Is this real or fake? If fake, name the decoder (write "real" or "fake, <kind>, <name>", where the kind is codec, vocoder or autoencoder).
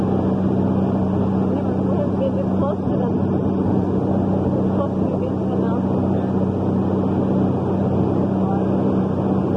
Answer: real